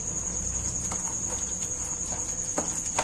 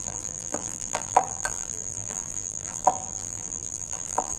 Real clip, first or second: first